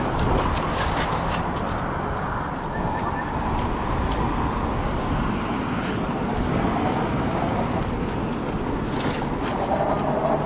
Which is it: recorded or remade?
recorded